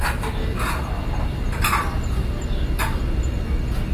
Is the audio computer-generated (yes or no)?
no